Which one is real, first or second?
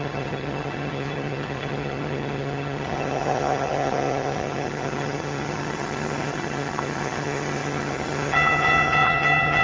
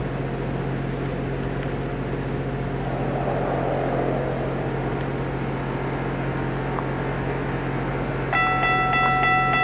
second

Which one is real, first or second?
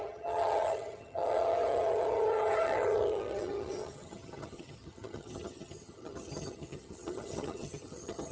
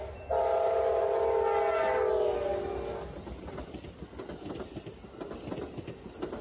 second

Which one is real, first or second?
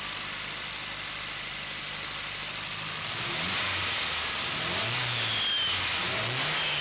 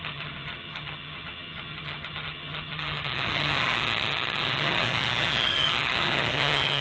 first